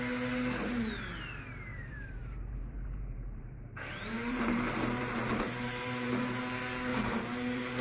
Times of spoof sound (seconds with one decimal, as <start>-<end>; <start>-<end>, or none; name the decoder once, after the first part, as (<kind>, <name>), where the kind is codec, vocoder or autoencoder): 1.7-6.4 (vocoder, BigVGAN v2); 6.9-7.8